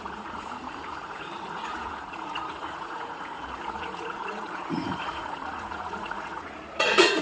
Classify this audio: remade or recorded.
remade